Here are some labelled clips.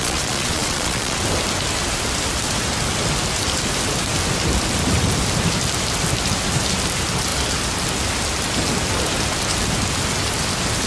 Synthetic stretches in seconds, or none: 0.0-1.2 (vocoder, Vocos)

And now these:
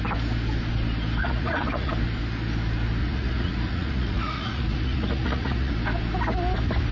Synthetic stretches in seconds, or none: 1.2-1.9 (vocoder, Vocos); 3.0-5.7

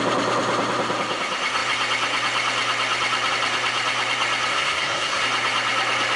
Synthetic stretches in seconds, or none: 4.5-5.2 (codec, SNAC)

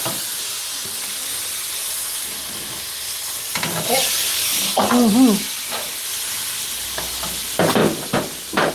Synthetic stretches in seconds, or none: none

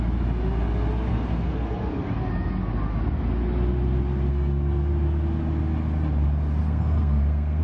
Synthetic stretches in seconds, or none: 1.1-2.0 (codec, SNAC); 4.3-4.9; 6.6-7.6

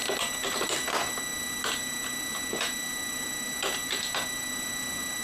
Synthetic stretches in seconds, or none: none